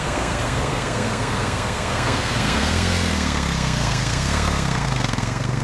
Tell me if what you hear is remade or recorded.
remade